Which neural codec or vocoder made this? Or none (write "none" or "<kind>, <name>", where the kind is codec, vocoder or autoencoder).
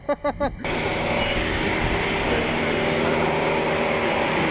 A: none